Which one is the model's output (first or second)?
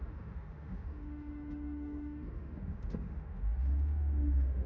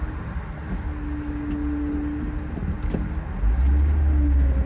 first